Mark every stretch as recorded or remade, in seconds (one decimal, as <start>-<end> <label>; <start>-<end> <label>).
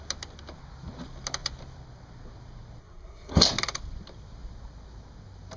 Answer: 0.0-2.8 recorded; 2.8-3.4 remade; 3.4-5.6 recorded